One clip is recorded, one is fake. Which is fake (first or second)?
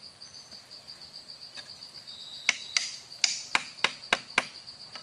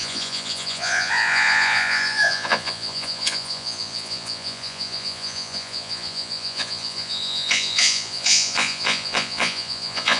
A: second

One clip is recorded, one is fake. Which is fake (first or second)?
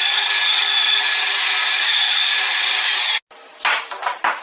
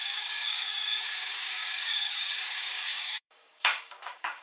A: second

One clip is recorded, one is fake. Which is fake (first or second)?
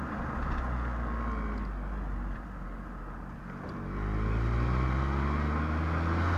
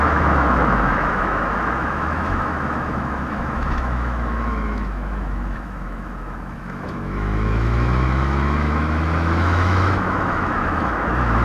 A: second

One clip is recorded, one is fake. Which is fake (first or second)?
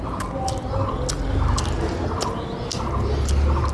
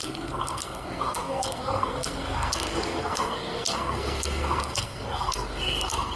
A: second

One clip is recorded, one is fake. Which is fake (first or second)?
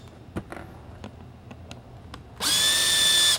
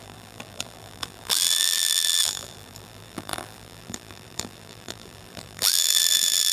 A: second